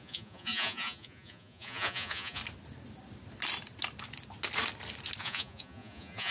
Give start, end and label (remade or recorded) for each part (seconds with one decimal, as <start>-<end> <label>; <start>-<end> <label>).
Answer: 0.0-2.4 remade; 2.4-5.2 recorded; 5.2-6.3 remade